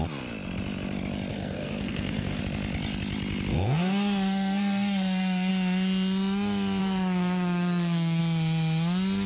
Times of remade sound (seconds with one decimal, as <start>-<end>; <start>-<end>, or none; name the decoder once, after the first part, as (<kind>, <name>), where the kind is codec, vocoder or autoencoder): 1.3-2.4 (codec, SNAC); 3.5-5.5; 6.8-8.2